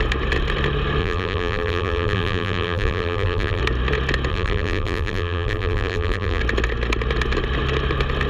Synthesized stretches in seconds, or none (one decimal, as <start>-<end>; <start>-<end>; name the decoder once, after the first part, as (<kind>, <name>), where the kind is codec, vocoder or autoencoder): 1.0-3.6 (vocoder, BigVGAN v2); 4.3-6.4